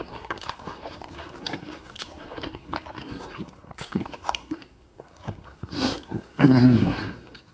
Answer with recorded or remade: remade